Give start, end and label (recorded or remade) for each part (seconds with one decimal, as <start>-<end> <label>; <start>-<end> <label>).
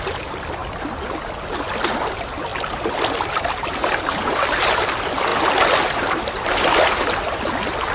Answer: 0.0-7.9 recorded